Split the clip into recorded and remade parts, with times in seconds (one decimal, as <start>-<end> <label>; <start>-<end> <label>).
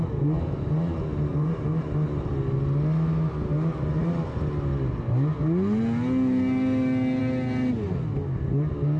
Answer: 0.0-1.3 recorded; 1.3-2.3 remade; 2.3-9.0 recorded